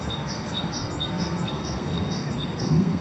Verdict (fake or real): fake